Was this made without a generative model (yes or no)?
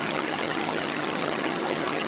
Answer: no